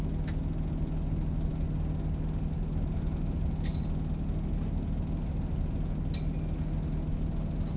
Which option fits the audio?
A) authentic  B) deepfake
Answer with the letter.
A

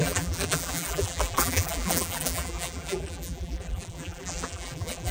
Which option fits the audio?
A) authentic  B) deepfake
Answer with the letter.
B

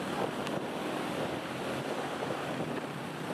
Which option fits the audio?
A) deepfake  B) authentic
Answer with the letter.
B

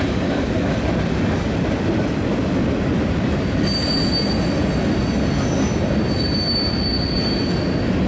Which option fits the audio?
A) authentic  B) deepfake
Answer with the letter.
A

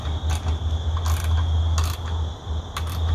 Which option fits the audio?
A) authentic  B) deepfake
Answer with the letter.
A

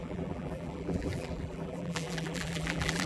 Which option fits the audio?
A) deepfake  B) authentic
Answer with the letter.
A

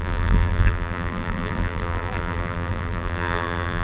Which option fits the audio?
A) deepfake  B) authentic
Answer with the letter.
A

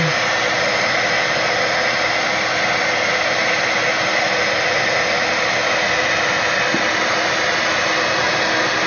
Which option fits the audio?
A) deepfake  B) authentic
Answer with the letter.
B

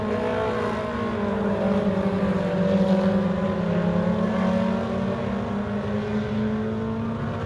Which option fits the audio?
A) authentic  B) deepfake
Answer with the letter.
A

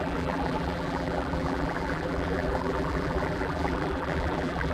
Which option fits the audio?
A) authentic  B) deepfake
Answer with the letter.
B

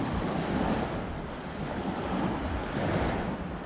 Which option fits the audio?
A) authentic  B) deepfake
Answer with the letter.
A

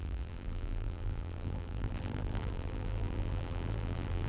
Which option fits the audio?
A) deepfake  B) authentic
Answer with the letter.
A